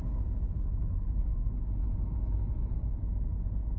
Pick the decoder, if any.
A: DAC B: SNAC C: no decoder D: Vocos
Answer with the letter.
C